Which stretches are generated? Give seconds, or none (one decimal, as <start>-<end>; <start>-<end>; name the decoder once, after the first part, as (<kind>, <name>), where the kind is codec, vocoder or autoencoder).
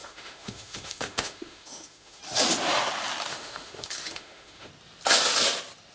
0.0-2.2 (autoencoder, DAC-VAE); 3.3-4.7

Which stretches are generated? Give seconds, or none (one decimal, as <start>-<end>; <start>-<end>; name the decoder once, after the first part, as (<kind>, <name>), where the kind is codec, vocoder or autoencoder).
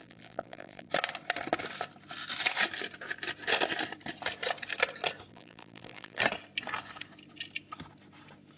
0.0-0.9 (vocoder, BigVGAN v2); 5.3-6.2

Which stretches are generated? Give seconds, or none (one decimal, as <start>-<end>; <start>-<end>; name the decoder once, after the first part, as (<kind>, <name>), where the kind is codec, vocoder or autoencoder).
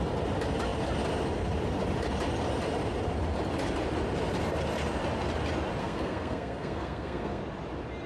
5.8-7.4 (codec, SNAC)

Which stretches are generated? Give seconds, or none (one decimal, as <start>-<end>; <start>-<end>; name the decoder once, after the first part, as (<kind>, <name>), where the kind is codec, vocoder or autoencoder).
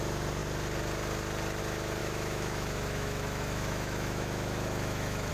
2.0-5.3 (autoencoder, DAC-VAE)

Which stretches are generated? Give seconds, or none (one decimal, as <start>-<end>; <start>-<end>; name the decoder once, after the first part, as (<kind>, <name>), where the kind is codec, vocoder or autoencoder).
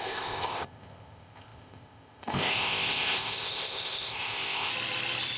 0.0-4.7 (codec, ZipCodec)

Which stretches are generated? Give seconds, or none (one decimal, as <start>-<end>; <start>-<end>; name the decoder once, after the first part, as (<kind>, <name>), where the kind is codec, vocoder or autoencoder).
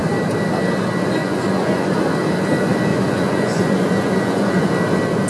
1.2-1.9 (vocoder, Vocos); 2.9-4.7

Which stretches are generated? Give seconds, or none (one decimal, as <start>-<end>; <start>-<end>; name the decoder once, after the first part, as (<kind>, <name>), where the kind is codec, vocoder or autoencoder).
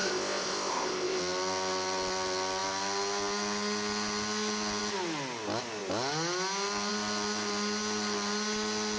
0.0-1.2 (codec, ZipCodec)